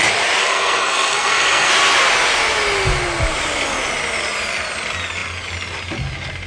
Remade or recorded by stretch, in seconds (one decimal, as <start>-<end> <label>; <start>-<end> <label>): 0.0-0.4 recorded; 0.4-1.7 remade; 1.7-6.5 recorded